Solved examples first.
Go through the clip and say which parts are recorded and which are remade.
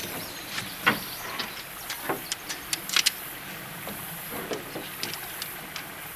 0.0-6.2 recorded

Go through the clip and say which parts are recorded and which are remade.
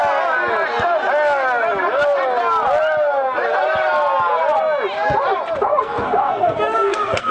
0.0-5.7 recorded; 5.7-7.3 remade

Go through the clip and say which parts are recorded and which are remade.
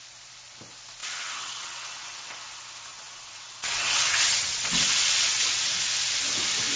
0.0-1.0 recorded; 1.0-2.3 remade; 2.3-2.9 recorded; 2.9-5.8 remade; 5.8-6.8 recorded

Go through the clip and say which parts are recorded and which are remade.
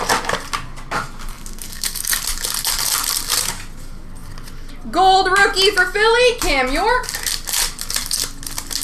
0.0-1.3 recorded; 1.3-2.2 remade; 2.2-8.8 recorded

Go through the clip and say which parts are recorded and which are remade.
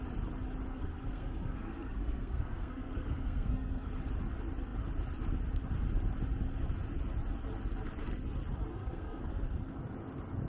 0.0-0.7 recorded; 0.7-3.9 remade; 3.9-8.7 recorded; 8.7-9.2 remade; 9.2-10.5 recorded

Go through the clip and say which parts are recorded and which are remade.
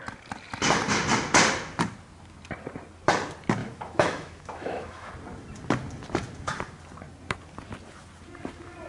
0.0-3.6 recorded; 3.6-5.1 remade; 5.1-8.9 recorded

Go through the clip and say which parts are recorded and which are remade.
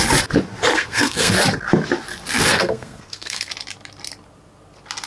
0.0-0.7 recorded; 0.7-1.3 remade; 1.3-2.5 recorded; 2.5-3.5 remade; 3.5-5.1 recorded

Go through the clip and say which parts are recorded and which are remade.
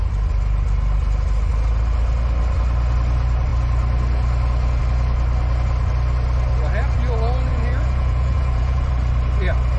0.0-7.5 recorded; 7.5-8.9 remade; 8.9-9.8 recorded